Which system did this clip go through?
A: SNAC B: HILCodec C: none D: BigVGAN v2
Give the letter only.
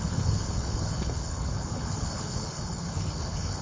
B